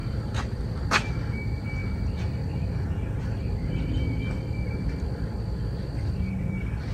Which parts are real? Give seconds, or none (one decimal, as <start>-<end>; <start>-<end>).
0.0-6.9